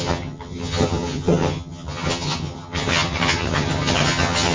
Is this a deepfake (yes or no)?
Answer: yes